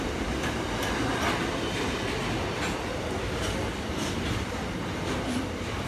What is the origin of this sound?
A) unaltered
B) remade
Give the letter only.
A